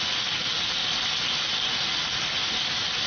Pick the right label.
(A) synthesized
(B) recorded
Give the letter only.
B